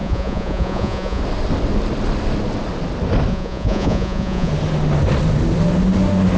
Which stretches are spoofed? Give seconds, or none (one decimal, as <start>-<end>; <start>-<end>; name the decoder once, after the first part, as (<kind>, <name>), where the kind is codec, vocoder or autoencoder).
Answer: 0.0-1.2 (vocoder, Vocos); 3.3-4.5